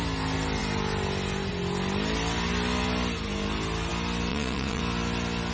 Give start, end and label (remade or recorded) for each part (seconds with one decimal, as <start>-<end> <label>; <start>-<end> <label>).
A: 0.0-4.3 recorded; 4.3-4.8 remade; 4.8-5.5 recorded